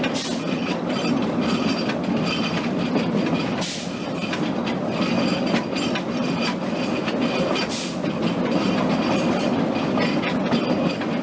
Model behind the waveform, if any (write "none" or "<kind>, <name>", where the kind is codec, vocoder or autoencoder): none